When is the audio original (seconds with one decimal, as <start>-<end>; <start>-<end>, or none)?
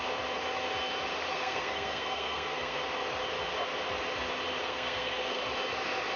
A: 0.0-1.3; 2.8-4.6; 5.4-6.2